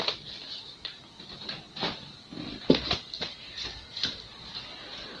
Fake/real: real